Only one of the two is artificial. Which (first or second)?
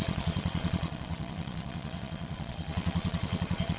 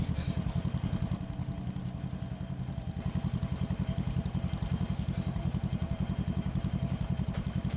first